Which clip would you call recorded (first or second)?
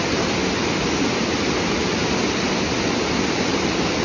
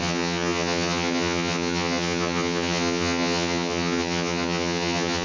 first